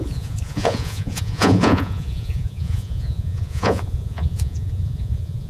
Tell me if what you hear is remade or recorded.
remade